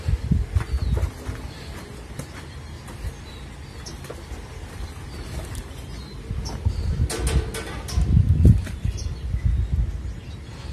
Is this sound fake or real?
real